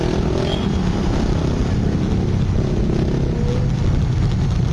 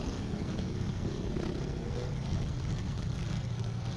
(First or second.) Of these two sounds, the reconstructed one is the second